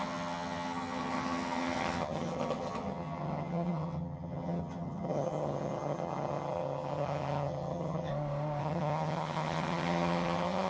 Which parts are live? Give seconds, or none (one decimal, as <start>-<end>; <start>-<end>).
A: 8.1-8.6